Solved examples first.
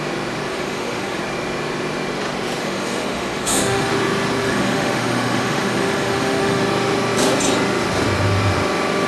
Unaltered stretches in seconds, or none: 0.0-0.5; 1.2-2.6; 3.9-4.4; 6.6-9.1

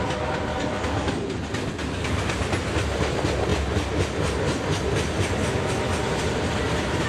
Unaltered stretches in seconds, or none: 0.0-0.5; 1.2-1.8; 2.4-7.1

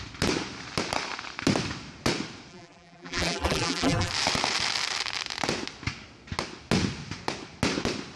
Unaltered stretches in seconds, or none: 0.0-2.5; 4.1-8.2

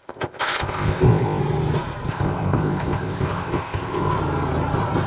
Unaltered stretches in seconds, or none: 1.4-2.1; 4.1-5.1

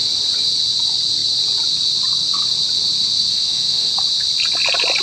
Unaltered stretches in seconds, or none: 0.0-3.3; 3.9-5.0

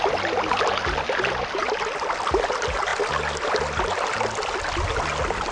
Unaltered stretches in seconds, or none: 0.0-5.5

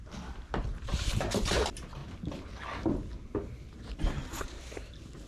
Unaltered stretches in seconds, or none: 2.0-4.4

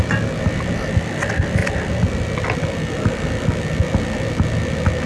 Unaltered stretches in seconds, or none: 0.0-5.1